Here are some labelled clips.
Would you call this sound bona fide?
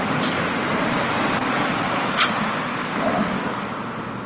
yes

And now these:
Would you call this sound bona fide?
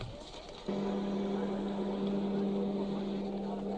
yes